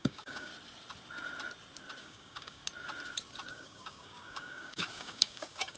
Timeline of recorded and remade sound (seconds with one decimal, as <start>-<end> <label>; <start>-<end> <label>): 0.0-0.5 remade; 0.5-2.0 recorded; 2.0-2.6 remade; 2.6-3.5 recorded; 3.5-5.8 remade